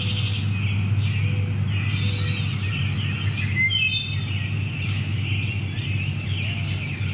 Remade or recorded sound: recorded